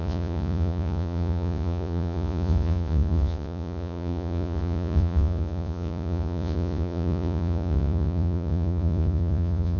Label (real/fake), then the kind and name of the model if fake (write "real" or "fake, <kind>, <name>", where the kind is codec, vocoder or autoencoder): fake, vocoder, Vocos